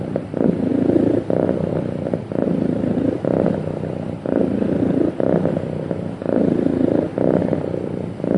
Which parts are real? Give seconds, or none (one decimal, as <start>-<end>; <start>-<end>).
0.0-8.4